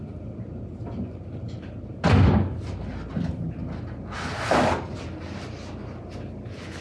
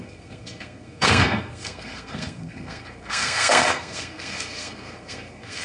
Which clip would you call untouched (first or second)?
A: first